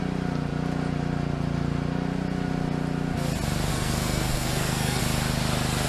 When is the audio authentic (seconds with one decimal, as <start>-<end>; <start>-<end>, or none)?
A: 0.0-3.7; 5.0-5.9